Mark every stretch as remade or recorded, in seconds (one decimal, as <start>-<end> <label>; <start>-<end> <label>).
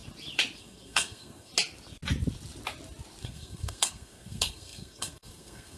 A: 0.0-0.6 recorded; 0.6-1.5 remade; 1.5-3.2 recorded; 3.2-5.8 remade